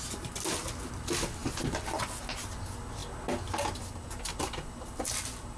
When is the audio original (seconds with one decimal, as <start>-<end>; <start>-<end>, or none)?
0.0-5.6